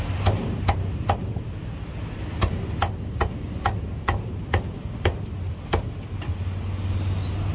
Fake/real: real